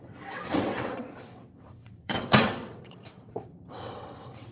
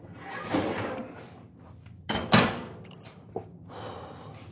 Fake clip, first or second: first